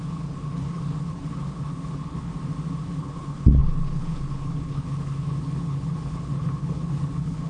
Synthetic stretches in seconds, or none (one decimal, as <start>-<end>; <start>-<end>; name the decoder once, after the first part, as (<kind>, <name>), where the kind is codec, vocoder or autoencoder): 0.0-2.3 (codec, HILCodec); 2.9-7.5